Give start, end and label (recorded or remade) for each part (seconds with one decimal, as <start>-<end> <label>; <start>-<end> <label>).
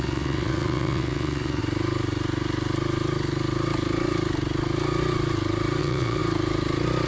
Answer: 0.0-1.6 remade; 1.6-5.8 recorded; 5.8-6.2 remade; 6.2-7.1 recorded